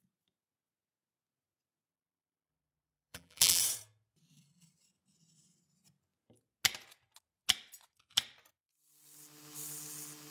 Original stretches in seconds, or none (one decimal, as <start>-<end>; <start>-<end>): 0.0-1.9; 3.6-10.3

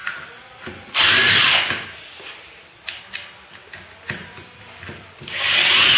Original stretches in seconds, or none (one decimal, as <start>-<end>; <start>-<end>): 3.0-4.2; 5.2-6.0

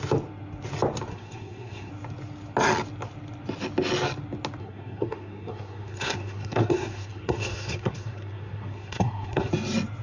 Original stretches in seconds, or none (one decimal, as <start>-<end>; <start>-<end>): 0.0-1.1; 1.9-4.6; 9.5-10.0

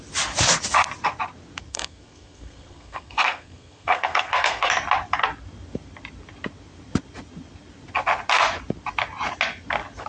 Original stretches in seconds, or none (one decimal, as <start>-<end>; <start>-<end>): 0.0-1.7; 4.7-10.1

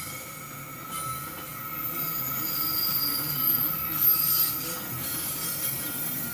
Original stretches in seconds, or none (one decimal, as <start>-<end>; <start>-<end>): 0.0-6.3

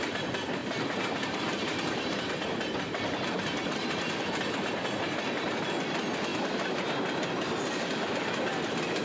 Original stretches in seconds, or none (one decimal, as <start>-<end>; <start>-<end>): 0.0-0.6; 2.3-9.0